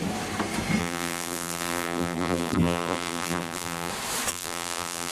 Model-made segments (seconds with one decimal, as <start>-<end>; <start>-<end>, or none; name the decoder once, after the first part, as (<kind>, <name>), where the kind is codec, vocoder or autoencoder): 0.8-3.9 (vocoder, BigVGAN v2); 4.3-5.1